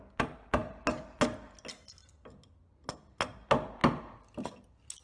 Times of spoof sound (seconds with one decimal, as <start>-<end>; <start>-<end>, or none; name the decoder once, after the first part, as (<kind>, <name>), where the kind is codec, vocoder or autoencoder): none